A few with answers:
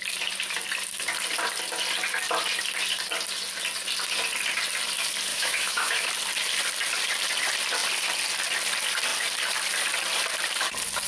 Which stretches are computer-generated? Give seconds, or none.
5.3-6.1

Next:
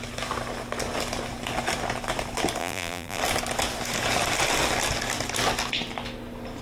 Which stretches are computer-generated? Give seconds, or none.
2.6-3.2